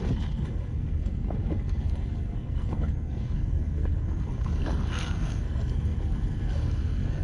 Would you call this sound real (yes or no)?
no